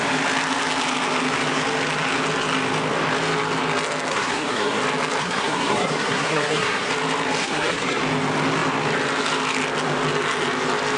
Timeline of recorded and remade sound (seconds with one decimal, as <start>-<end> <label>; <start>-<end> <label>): 0.0-4.1 recorded; 4.1-4.8 remade; 4.8-5.2 recorded; 5.2-6.9 remade; 6.9-7.4 recorded; 7.4-8.0 remade; 8.0-11.0 recorded